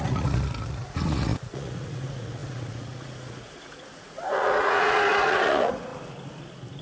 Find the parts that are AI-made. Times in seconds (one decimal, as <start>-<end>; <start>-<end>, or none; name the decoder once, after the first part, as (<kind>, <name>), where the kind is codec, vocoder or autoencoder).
0.0-5.9 (vocoder, Vocos)